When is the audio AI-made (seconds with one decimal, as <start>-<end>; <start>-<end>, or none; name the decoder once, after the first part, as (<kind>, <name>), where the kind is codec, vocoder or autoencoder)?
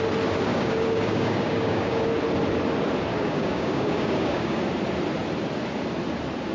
0.5-2.0 (codec, DAC); 3.1-4.6